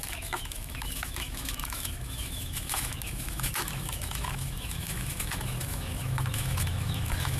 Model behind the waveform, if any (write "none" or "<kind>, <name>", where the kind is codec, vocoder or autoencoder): autoencoder, DAC-VAE